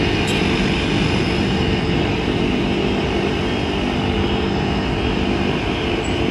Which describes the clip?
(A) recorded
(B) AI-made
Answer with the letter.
A